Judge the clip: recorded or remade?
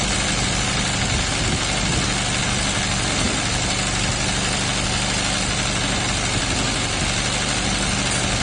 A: recorded